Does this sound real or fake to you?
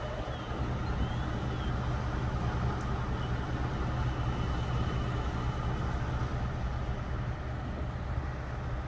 real